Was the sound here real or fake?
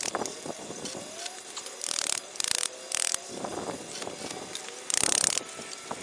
real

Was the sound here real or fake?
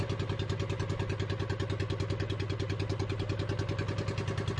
real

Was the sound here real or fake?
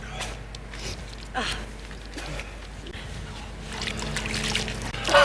real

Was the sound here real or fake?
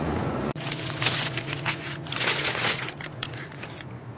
fake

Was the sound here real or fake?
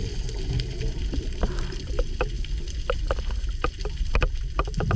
real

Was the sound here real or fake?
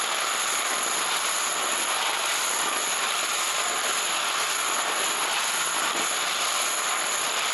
real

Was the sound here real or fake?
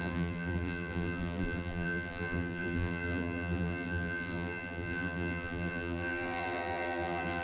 fake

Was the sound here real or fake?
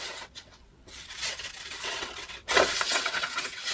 fake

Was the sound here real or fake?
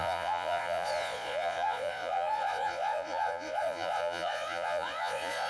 fake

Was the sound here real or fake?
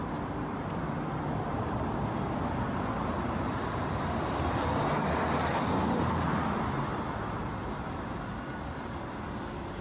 real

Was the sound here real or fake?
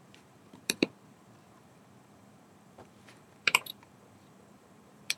fake